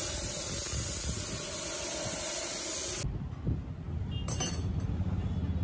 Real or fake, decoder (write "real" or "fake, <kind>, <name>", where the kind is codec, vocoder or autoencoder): real